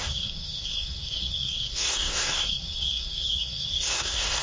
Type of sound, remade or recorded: remade